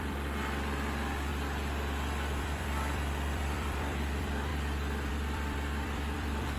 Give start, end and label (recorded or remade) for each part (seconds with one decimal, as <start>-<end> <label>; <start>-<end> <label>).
0.0-1.3 remade; 1.3-2.4 recorded; 2.4-6.6 remade